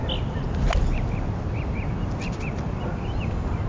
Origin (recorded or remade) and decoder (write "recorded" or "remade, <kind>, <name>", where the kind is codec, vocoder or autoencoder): recorded